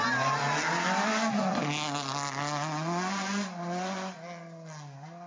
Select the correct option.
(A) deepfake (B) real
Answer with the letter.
B